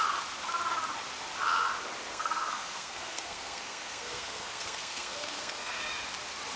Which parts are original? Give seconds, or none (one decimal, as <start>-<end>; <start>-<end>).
0.0-2.1; 5.8-6.6